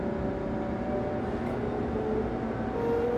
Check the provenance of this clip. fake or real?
real